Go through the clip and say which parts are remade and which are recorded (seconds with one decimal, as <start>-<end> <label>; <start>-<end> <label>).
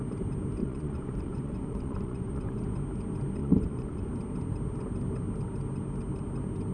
0.0-0.6 recorded; 0.6-2.7 remade; 2.7-3.4 recorded; 3.4-4.1 remade; 4.1-6.7 recorded